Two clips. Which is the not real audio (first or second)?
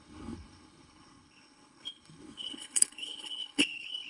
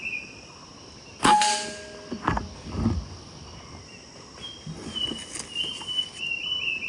first